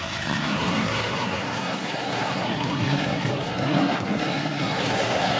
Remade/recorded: remade